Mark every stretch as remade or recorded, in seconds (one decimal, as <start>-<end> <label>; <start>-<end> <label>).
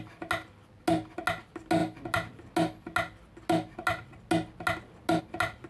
0.0-5.7 recorded